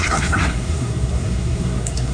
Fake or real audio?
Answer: fake